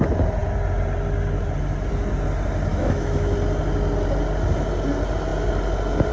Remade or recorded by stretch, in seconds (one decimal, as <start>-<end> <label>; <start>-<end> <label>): 0.0-2.7 recorded; 2.7-3.3 remade; 3.3-6.1 recorded